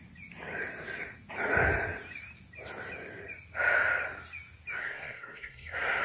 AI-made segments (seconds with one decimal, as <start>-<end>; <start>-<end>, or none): 4.8-6.0